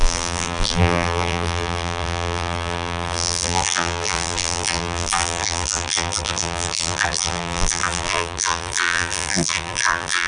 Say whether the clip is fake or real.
fake